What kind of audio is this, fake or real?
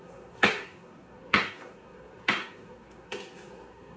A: fake